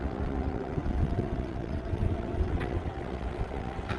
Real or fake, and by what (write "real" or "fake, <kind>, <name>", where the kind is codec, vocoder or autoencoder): fake, vocoder, WaveNeXt